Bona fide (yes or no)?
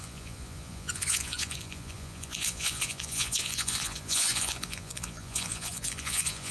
no